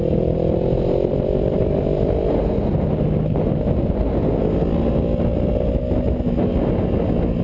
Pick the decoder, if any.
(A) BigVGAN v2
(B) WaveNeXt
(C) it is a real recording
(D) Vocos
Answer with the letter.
C